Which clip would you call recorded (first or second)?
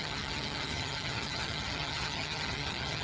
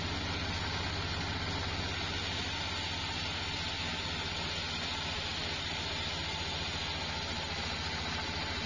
second